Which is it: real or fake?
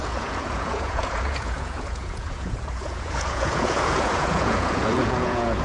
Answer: fake